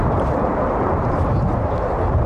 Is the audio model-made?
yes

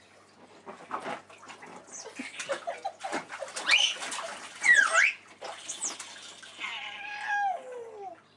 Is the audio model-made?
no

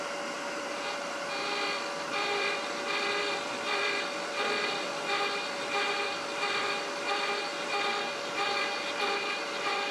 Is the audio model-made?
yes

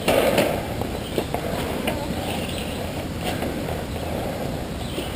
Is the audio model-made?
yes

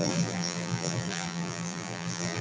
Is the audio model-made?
yes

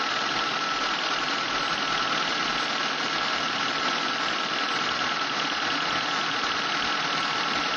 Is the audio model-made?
no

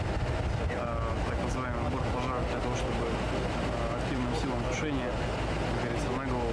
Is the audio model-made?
no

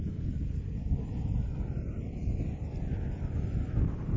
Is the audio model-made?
yes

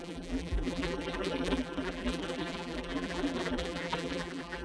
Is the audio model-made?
yes